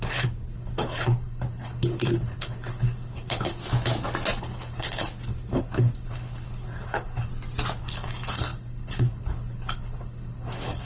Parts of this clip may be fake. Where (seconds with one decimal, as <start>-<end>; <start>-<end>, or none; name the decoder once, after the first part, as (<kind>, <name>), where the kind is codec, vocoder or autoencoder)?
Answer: 0.0-3.6 (codec, HILCodec); 4.4-7.3; 7.8-10.9